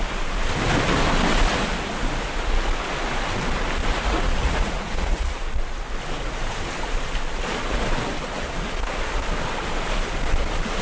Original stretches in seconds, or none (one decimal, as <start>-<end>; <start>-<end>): 0.0-3.9; 5.4-10.8